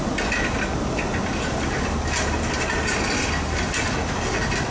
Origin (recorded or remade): recorded